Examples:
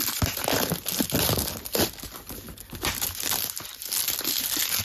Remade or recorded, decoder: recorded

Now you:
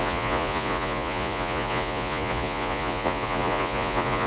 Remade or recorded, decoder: remade, vocoder, Vocos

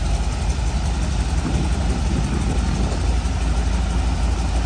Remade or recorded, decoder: recorded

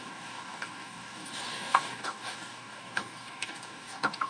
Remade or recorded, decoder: remade, codec, DAC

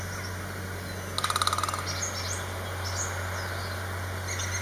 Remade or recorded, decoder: recorded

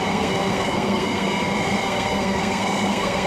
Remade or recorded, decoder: remade, codec, SNAC